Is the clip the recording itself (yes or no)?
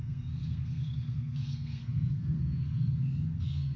no